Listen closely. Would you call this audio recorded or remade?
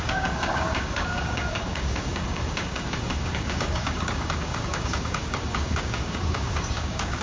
remade